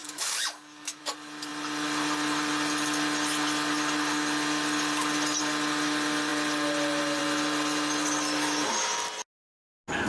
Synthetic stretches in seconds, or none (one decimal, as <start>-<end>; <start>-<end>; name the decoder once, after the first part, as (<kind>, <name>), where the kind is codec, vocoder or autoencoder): 0.0-1.0 (codec, DAC)